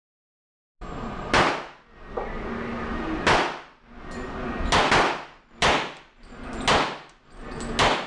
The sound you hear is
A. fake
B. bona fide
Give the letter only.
B